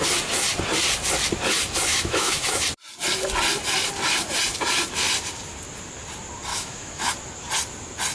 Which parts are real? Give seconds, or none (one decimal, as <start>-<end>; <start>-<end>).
0.0-1.9; 2.6-6.5; 7.1-8.1